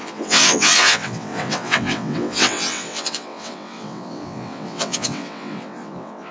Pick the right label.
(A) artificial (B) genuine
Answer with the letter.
A